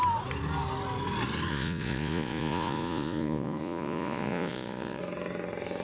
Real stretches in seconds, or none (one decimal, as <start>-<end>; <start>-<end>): 0.0-1.5; 5.0-5.8